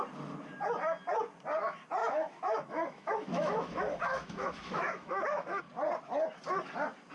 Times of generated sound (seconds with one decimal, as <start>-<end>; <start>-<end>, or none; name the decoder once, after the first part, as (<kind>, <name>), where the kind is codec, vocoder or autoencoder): 2.0-5.6 (autoencoder, DAC-VAE)